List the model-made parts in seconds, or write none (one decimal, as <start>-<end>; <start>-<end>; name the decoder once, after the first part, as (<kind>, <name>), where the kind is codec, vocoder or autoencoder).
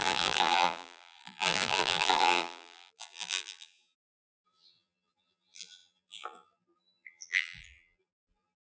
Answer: 0.0-8.7 (vocoder, BigVGAN v2)